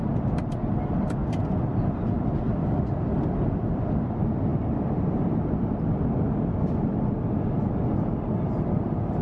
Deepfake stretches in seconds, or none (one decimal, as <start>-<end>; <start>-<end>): 0.0-9.2

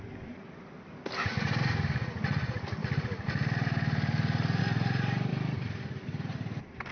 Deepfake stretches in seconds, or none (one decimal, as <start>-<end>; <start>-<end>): 2.8-4.6; 5.3-6.9

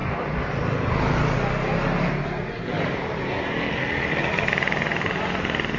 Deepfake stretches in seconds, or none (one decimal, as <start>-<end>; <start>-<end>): none

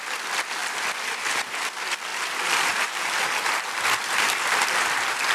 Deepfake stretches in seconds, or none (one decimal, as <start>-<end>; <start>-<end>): 0.6-1.1; 2.1-5.3

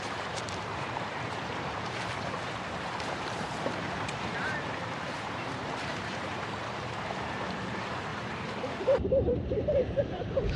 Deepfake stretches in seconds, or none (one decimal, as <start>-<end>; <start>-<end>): 0.0-10.6